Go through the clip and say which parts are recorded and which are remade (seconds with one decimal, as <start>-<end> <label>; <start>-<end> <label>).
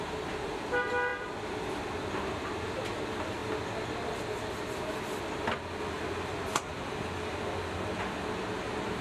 0.0-9.0 recorded